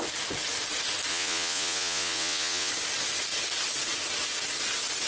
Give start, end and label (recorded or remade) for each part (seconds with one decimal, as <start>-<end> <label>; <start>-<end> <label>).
0.0-1.1 recorded; 1.1-2.7 remade; 2.7-5.1 recorded